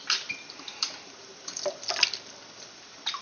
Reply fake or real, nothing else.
real